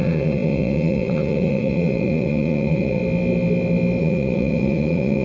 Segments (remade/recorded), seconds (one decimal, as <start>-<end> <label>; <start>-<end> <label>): 0.0-3.0 remade; 3.0-4.0 recorded; 4.0-5.2 remade